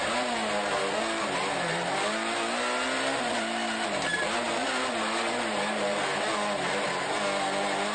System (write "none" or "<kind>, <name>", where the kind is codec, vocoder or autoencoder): none